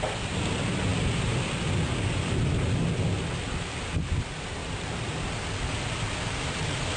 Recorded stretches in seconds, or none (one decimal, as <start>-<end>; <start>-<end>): 0.0-4.6; 5.4-7.0